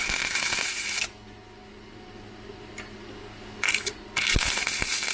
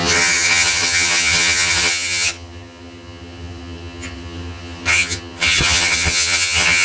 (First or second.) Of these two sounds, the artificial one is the second